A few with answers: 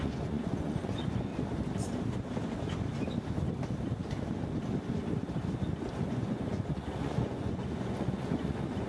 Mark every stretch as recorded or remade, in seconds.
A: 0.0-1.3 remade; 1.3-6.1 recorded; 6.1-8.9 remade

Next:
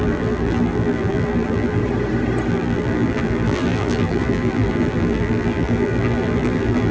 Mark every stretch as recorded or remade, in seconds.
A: 0.0-1.8 remade; 1.8-2.5 recorded; 2.5-6.9 remade

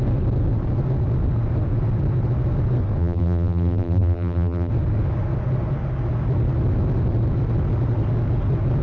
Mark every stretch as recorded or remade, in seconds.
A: 0.0-3.0 recorded; 3.0-4.7 remade; 4.7-8.8 recorded

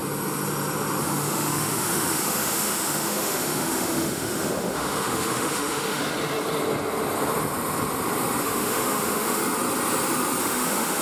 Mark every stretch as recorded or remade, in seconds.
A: 0.0-1.0 recorded; 1.0-6.0 remade; 6.0-8.4 recorded; 8.4-9.4 remade; 9.4-10.4 recorded; 10.4-11.0 remade

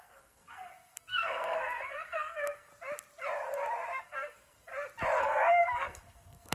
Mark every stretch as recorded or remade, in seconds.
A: 0.0-2.7 remade; 2.7-4.0 recorded; 4.0-4.7 remade; 4.7-5.2 recorded; 5.2-6.5 remade

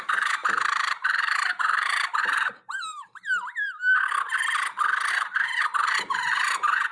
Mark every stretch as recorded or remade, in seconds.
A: 0.0-3.8 remade; 3.8-5.1 recorded; 5.1-6.9 remade

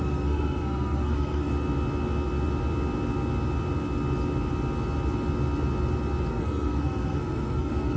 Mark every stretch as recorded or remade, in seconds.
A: 0.0-1.5 remade; 1.5-6.3 recorded; 6.3-8.0 remade